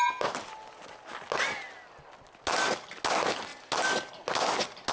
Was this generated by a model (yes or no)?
no